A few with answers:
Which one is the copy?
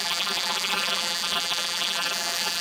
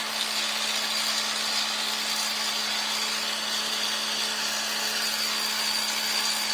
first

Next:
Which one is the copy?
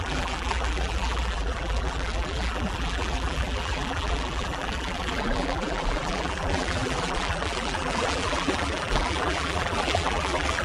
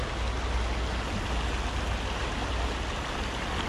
first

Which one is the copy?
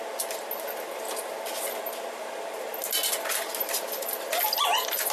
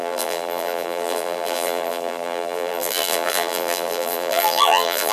second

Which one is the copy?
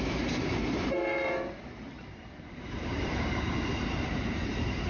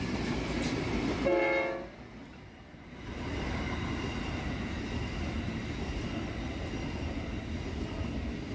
first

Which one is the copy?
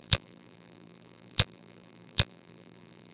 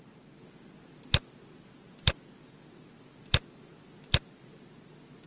first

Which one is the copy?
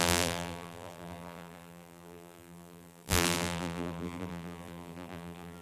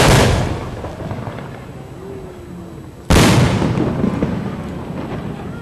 first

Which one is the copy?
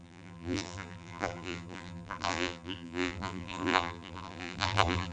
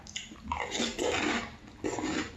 first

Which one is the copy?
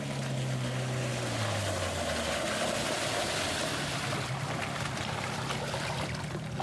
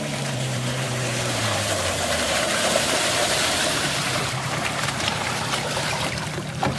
second